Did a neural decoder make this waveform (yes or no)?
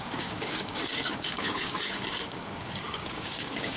yes